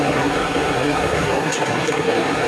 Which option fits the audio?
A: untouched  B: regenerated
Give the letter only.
B